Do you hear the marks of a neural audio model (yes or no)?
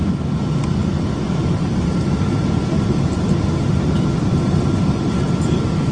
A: no